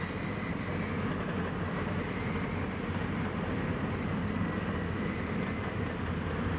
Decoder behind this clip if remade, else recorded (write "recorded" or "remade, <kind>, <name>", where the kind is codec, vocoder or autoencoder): recorded